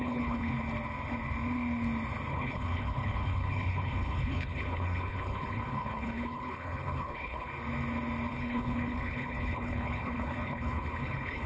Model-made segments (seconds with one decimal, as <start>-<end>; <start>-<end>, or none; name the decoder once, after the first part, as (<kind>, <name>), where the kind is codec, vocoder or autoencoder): 0.0-0.5 (codec, HILCodec); 2.3-7.5; 8.3-11.5